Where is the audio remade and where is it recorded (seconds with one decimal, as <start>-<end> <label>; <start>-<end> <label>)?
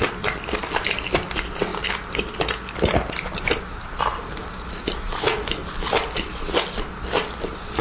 0.0-7.8 recorded